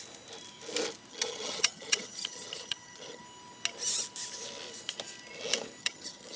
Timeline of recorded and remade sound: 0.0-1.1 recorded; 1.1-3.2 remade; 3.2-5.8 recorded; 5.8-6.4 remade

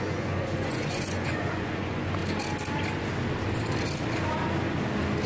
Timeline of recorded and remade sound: 0.0-2.2 remade; 2.2-5.3 recorded

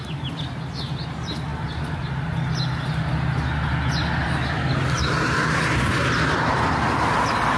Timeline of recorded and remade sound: 0.0-7.6 recorded

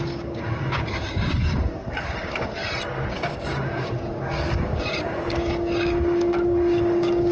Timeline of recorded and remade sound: 0.0-2.6 remade; 2.6-3.1 recorded; 3.1-7.3 remade

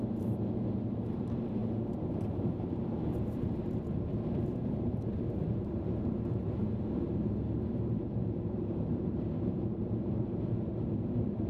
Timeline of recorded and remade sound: 0.0-1.6 remade; 1.6-2.2 recorded; 2.2-11.5 remade

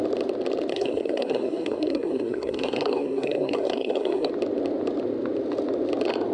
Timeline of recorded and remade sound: 0.0-0.7 recorded; 0.7-4.3 remade; 4.3-6.3 recorded

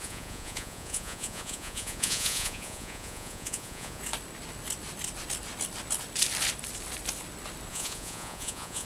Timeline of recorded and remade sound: 0.0-4.0 remade; 4.0-7.7 recorded; 7.7-8.9 remade

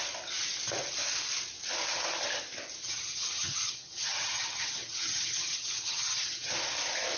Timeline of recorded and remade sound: 0.0-2.8 recorded; 2.8-6.5 remade; 6.5-7.2 recorded